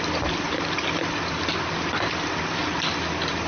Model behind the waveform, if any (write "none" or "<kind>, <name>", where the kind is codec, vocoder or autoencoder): none